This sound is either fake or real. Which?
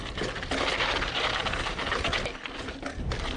real